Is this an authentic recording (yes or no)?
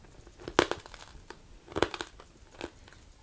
yes